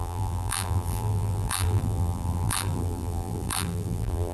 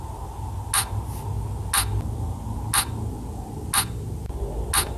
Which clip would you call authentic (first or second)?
second